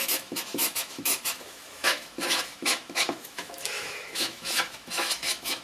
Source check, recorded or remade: remade